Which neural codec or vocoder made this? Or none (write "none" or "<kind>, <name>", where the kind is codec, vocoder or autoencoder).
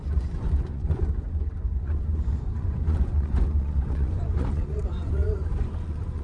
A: vocoder, Vocos